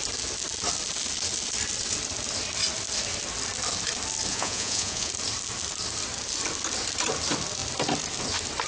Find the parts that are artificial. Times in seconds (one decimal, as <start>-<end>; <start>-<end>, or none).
4.3-5.1